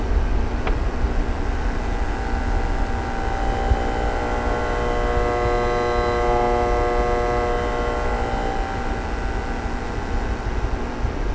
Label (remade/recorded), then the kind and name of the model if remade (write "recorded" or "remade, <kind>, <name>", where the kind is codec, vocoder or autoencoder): recorded